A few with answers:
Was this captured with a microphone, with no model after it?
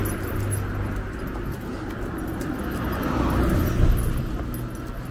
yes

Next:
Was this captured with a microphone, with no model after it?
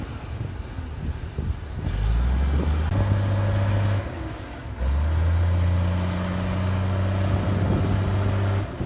yes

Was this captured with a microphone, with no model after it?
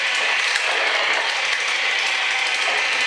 yes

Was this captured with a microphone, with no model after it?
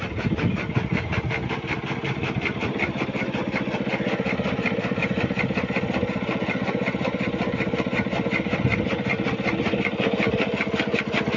yes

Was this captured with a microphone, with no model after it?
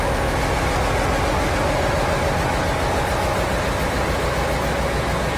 yes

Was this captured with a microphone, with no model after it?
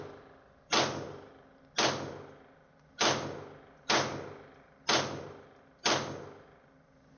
yes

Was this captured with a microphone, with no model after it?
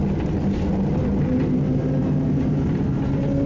yes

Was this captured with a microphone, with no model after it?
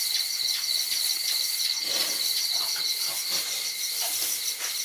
yes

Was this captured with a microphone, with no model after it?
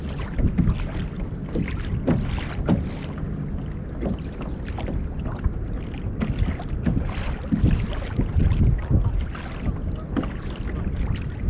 yes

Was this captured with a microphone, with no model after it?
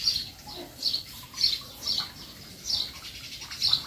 yes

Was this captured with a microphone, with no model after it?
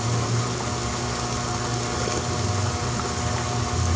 yes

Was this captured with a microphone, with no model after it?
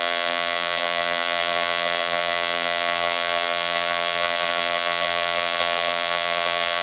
no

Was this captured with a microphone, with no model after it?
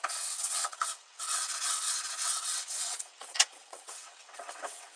no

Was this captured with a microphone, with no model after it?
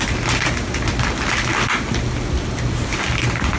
yes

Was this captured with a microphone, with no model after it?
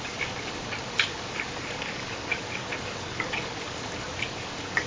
no